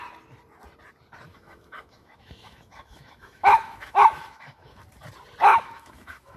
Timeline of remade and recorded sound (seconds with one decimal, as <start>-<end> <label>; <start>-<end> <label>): 0.0-1.3 recorded; 1.3-4.8 remade; 4.8-5.5 recorded; 5.5-6.4 remade